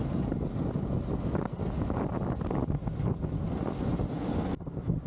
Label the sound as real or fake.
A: real